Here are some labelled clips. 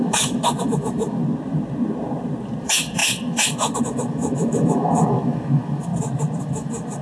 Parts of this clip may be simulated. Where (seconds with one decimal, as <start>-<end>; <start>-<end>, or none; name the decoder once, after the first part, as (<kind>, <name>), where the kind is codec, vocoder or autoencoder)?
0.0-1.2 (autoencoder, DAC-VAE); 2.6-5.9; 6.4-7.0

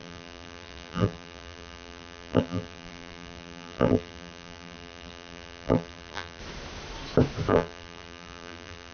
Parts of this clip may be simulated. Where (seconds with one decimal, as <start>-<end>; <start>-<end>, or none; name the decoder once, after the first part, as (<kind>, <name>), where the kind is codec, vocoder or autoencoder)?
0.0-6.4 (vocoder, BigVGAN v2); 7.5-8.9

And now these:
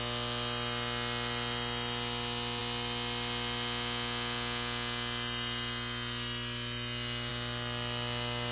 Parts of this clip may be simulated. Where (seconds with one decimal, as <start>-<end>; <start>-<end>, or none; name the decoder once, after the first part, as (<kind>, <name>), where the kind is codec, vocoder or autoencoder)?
none

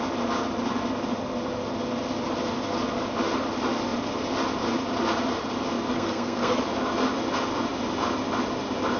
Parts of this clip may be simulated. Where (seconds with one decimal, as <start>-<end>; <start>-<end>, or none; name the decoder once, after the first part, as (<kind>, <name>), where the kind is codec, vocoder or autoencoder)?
5.9-6.6 (codec, SNAC)

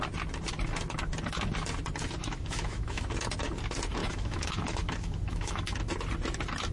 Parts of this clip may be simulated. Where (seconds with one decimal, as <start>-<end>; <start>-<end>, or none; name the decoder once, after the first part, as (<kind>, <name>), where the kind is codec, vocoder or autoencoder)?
2.2-3.0 (autoencoder, DAC-VAE); 4.0-5.8

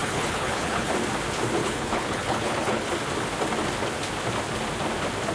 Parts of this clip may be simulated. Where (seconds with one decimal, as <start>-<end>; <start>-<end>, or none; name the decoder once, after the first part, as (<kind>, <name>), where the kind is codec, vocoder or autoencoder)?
0.0-0.9 (codec, HILCodec); 1.6-2.9